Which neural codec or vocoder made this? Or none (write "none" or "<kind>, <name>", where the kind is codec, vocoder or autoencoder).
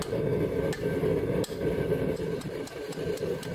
none